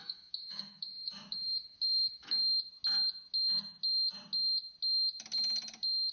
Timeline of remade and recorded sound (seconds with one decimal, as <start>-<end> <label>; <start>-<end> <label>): 0.0-2.4 remade; 2.4-6.1 recorded